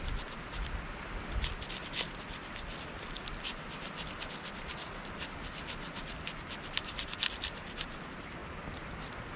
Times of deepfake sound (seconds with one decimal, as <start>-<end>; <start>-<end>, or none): none